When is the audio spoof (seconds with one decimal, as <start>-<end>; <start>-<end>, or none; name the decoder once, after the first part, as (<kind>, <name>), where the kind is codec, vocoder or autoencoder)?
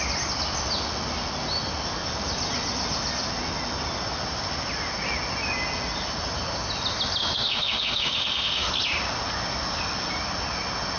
7.2-8.7 (autoencoder, DAC-VAE)